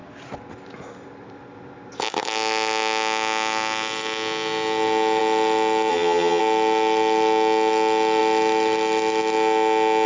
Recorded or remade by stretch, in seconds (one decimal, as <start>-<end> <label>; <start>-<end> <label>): 0.0-5.9 recorded; 5.9-6.4 remade; 6.4-10.1 recorded